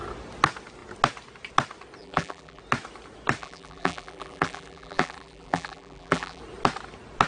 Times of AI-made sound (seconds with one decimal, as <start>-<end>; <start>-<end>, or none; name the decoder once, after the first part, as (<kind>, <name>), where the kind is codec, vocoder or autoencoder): 2.0-2.6 (vocoder, BigVGAN v2); 3.4-6.4